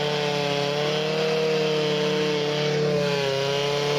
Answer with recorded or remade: recorded